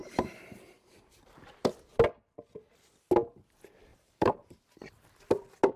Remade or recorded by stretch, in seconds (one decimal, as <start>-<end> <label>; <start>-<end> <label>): 0.0-1.5 remade; 1.5-3.9 recorded; 3.9-4.5 remade; 4.5-5.8 recorded